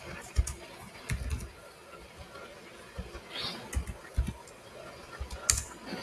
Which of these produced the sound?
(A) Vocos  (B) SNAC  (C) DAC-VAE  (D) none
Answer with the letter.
D